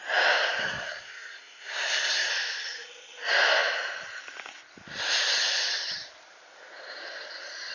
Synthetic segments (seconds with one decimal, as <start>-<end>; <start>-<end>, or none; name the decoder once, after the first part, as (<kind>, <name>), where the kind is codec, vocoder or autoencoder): 0.6-2.3 (codec, SNAC)